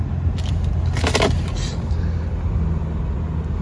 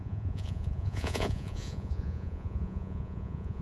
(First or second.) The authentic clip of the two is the first